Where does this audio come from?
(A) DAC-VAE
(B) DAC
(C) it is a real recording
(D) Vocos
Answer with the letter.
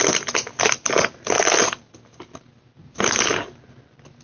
C